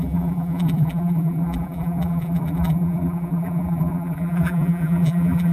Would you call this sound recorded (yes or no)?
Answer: no